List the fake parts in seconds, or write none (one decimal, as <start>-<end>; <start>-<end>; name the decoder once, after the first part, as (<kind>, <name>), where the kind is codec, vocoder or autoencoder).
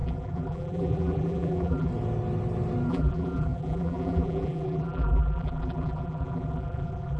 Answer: 0.0-1.9 (vocoder, BigVGAN v2); 2.9-7.2